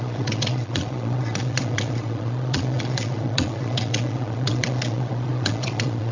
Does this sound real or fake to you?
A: fake